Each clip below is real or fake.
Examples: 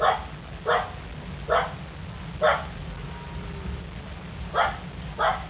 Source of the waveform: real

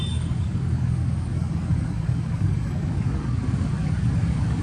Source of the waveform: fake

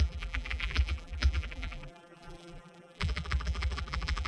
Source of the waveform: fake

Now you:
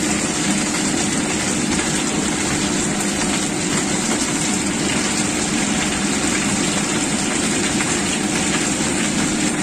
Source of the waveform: real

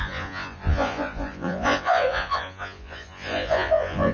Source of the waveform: fake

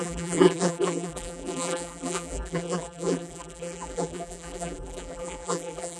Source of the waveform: fake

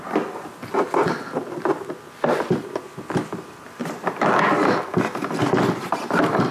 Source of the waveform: real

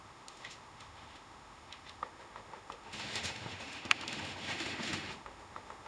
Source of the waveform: fake